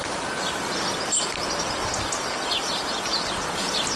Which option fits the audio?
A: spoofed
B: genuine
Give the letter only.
B